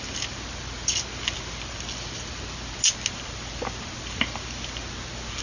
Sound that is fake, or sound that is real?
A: real